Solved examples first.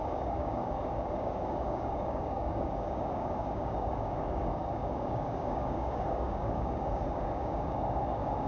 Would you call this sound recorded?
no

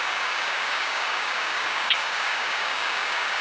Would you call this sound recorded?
no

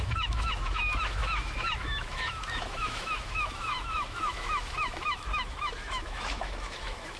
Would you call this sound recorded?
no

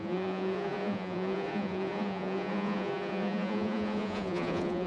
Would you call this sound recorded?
no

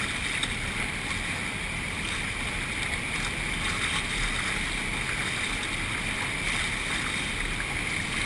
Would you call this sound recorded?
yes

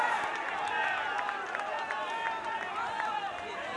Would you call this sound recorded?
yes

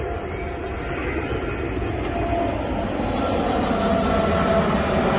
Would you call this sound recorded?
yes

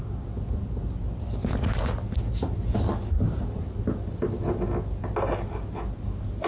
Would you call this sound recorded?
yes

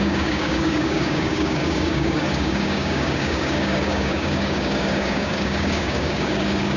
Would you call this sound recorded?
no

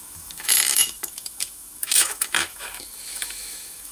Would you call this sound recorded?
no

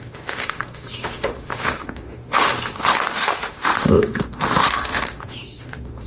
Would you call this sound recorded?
no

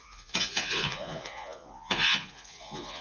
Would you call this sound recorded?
no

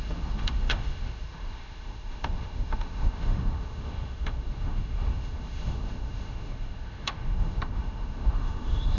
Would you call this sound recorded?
no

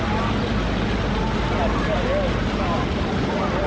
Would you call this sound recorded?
yes